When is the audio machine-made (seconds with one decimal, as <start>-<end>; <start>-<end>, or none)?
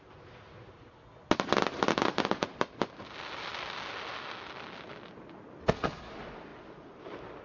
none